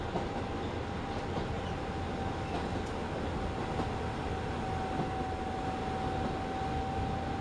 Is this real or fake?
real